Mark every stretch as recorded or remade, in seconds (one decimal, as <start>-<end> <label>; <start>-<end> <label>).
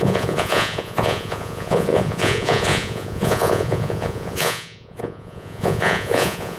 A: 0.0-6.6 remade